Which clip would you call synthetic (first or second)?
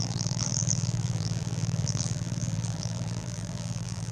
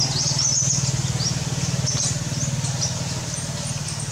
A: first